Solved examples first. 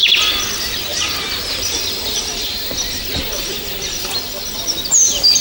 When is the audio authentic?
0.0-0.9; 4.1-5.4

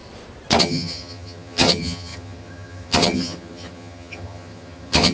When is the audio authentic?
0.0-0.6

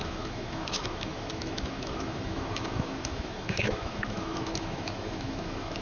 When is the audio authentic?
none

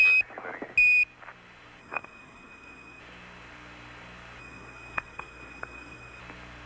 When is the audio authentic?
0.0-1.8; 3.0-4.4; 6.2-6.7

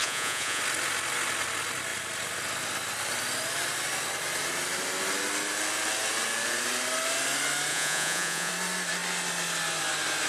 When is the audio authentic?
0.6-7.7; 8.5-10.3